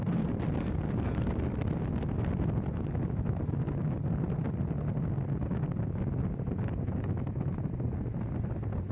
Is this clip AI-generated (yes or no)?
no